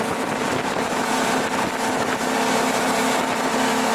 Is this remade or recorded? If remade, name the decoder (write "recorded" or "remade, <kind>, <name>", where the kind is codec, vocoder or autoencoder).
recorded